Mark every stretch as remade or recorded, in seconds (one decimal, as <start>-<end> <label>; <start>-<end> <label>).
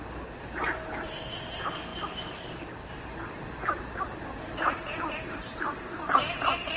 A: 0.0-6.8 recorded